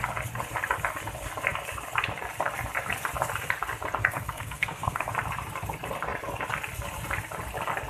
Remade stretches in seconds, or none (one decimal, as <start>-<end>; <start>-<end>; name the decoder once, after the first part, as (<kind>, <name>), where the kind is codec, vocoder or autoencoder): 4.0-5.1 (codec, SNAC)